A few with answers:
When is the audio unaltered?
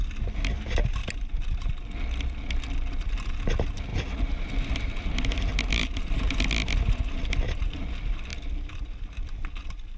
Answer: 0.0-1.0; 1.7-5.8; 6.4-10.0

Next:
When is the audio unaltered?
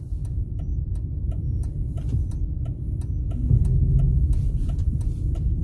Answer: 0.0-0.7; 3.1-5.6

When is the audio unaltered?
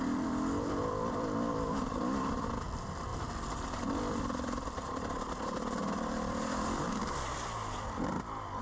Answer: 3.1-4.2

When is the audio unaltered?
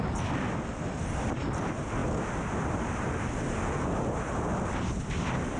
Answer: none